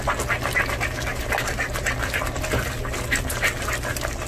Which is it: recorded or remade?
recorded